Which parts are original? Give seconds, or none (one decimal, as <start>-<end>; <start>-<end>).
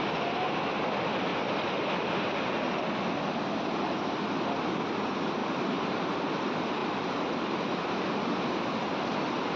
0.0-1.3; 2.3-5.4; 6.2-6.8; 8.2-9.6